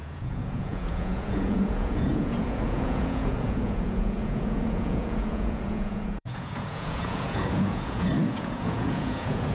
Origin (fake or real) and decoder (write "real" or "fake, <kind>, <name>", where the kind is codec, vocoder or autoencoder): fake, vocoder, Vocos